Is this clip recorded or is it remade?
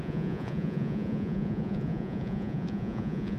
remade